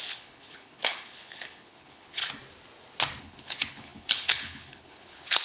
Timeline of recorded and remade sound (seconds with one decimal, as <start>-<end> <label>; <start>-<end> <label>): 0.0-2.2 remade; 2.2-3.2 recorded; 3.2-5.4 remade